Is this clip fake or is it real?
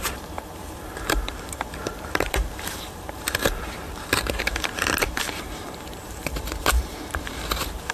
fake